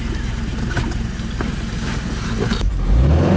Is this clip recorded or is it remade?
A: recorded